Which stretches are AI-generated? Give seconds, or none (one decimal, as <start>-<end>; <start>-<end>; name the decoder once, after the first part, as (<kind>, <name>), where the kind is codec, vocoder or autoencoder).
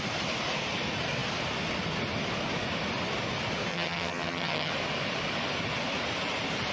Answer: 3.7-4.7 (vocoder, HiFi-GAN)